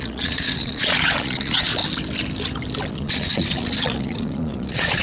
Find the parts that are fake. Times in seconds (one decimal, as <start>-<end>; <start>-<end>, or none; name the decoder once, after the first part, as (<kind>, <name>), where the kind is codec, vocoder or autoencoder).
0.0-1.8 (vocoder, Vocos); 2.9-5.0